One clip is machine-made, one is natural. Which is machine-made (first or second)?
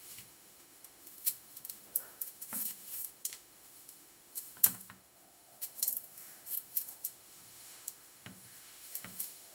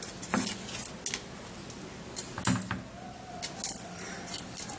first